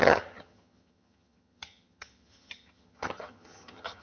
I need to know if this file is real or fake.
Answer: fake